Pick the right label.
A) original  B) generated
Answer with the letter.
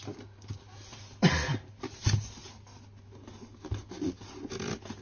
A